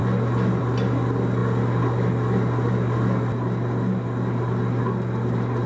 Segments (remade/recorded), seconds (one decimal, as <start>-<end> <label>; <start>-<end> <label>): 0.0-5.7 recorded